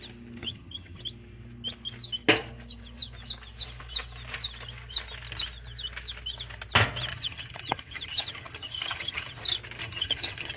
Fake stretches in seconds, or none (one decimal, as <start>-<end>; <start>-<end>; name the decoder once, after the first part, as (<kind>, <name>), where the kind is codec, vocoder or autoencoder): 0.4-1.0 (vocoder, HiFi-GAN); 7.1-9.4; 9.8-10.6